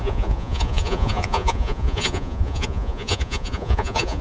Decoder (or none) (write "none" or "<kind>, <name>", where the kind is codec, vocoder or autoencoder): vocoder, Vocos